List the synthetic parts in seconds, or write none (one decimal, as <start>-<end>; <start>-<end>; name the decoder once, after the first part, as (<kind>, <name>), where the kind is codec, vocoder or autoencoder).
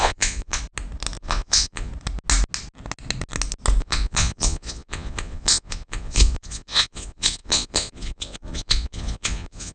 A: 0.0-0.6 (vocoder, Vocos); 1.2-1.9; 3.8-9.7